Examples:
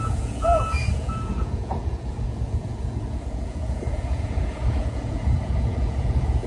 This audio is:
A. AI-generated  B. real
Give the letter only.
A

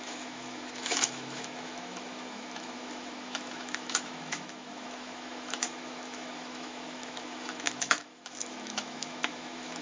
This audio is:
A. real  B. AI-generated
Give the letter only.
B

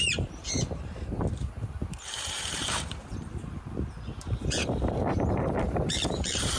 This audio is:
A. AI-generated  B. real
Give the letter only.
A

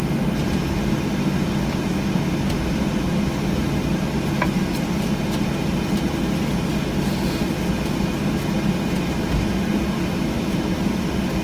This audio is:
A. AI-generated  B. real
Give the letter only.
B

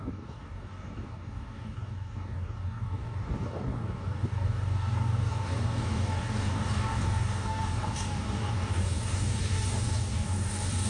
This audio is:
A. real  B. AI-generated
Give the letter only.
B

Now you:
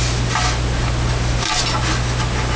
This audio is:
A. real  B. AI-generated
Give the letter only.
A